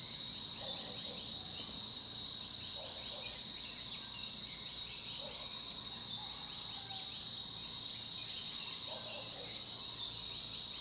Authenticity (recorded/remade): recorded